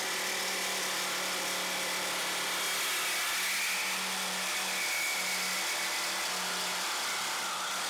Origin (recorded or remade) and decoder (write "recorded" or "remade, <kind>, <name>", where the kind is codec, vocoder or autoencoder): recorded